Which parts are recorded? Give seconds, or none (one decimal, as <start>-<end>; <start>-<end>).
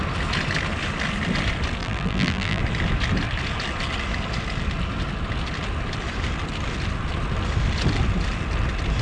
0.0-1.8; 2.6-9.0